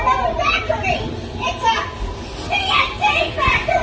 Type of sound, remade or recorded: recorded